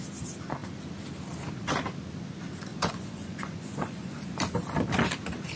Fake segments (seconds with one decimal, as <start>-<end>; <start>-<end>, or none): 2.7-4.2